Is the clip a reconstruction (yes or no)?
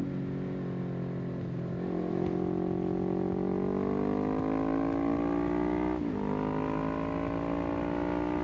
no